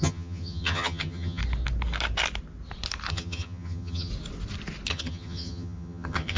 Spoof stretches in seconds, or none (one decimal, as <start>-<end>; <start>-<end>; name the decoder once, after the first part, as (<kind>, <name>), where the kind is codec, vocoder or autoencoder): 0.0-1.4 (vocoder, HiFi-GAN); 3.1-4.1; 4.9-6.4